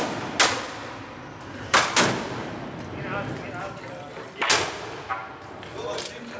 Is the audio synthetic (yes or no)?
no